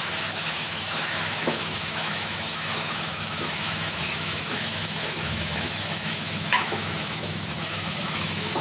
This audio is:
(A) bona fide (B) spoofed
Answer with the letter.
B